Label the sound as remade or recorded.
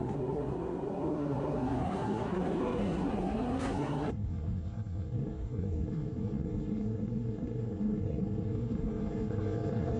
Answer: remade